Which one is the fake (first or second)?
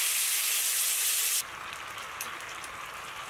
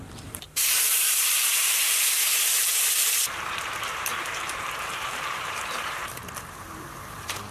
second